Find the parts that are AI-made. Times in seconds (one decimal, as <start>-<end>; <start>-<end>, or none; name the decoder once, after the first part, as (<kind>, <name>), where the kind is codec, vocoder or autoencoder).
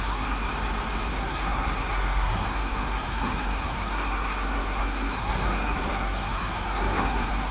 0.0-0.5 (codec, SNAC); 1.1-7.5